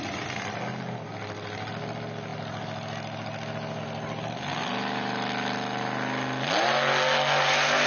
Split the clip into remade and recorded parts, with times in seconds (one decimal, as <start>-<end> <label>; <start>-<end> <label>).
0.0-7.9 recorded